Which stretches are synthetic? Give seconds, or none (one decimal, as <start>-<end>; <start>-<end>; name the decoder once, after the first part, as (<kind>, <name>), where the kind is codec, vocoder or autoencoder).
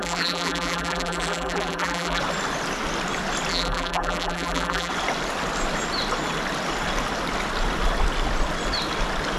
0.0-2.2 (vocoder, BigVGAN v2); 3.5-4.9